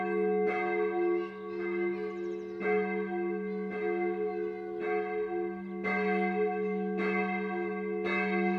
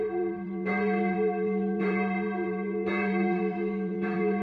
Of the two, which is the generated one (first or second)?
second